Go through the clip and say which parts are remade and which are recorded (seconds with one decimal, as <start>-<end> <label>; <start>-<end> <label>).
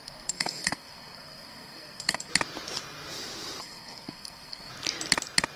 0.0-2.3 remade; 2.3-3.6 recorded; 3.6-4.7 remade; 4.7-5.6 recorded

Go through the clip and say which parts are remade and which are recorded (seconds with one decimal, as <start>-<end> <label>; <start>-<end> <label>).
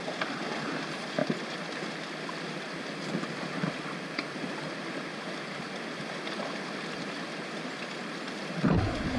0.0-9.2 recorded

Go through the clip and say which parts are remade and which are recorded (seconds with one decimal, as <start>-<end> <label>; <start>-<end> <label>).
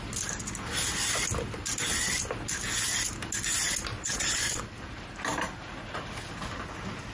0.0-3.9 recorded; 3.9-4.6 remade; 4.6-7.1 recorded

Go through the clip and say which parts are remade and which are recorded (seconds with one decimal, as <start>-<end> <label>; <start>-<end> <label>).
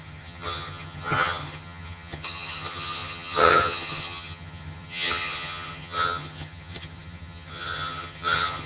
0.0-8.7 remade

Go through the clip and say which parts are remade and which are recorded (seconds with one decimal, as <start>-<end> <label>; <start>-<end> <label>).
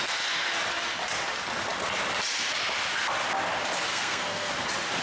0.0-3.9 recorded; 3.9-4.5 remade; 4.5-5.0 recorded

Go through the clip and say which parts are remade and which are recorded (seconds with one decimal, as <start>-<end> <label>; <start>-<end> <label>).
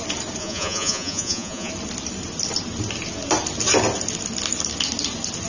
0.0-0.4 recorded; 0.4-1.7 remade; 1.7-5.5 recorded